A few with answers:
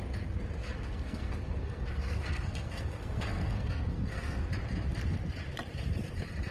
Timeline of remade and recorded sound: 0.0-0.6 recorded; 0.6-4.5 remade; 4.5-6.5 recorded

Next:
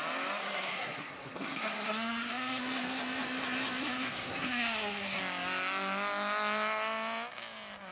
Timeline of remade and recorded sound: 0.0-0.4 recorded; 0.4-2.6 remade; 2.6-3.8 recorded; 3.8-5.2 remade; 5.2-7.9 recorded

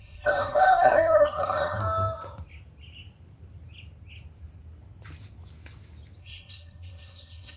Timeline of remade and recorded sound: 0.0-1.8 remade; 1.8-6.2 recorded; 6.2-7.6 remade

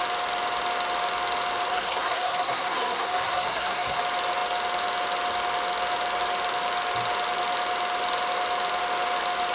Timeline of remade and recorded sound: 0.0-1.7 recorded; 1.7-4.0 remade; 4.0-9.5 recorded

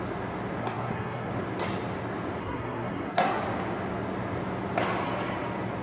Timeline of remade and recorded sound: 0.0-0.6 recorded; 0.6-1.3 remade; 1.3-2.4 recorded; 2.4-3.4 remade; 3.4-5.8 recorded